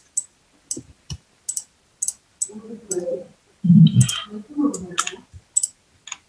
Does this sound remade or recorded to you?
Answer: recorded